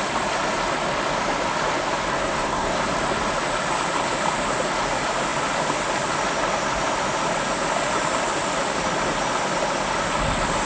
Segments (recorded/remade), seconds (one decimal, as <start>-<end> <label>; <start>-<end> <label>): 0.0-2.1 recorded; 2.1-2.8 remade; 2.8-10.7 recorded